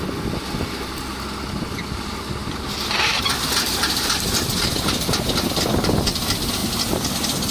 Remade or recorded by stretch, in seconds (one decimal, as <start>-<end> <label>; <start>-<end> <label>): 0.0-2.4 recorded; 2.4-4.5 remade; 4.5-7.5 recorded